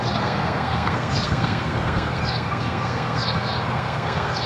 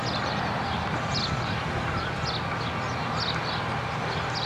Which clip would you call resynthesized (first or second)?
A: first